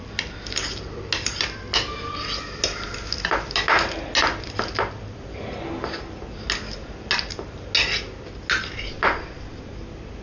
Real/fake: real